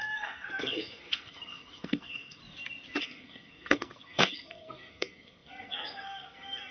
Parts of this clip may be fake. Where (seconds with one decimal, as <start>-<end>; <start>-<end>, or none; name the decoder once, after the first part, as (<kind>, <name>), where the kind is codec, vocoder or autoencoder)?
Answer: 0.0-2.4 (codec, SNAC); 3.0-6.7